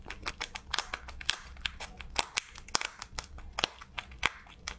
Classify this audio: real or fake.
real